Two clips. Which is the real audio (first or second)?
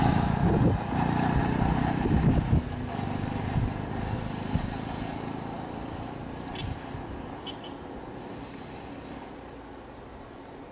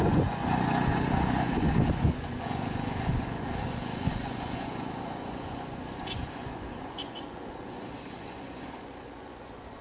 first